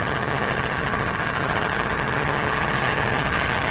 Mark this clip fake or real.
fake